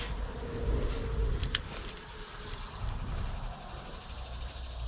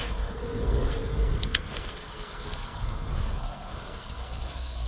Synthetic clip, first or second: second